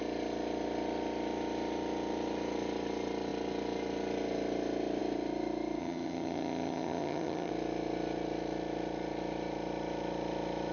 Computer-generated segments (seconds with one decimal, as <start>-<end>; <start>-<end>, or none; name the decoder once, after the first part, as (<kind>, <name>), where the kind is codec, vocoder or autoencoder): 5.8-7.5 (vocoder, HiFi-GAN)